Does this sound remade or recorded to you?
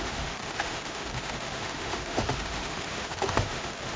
remade